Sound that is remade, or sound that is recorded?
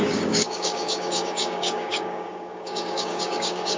remade